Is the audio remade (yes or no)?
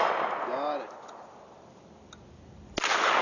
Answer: no